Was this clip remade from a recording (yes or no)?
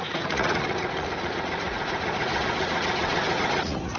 yes